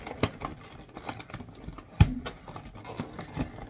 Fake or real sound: real